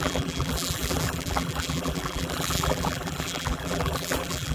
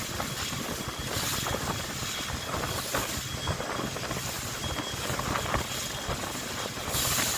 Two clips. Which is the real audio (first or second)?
second